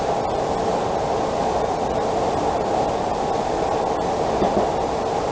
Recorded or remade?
recorded